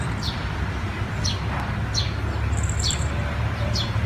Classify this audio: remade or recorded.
recorded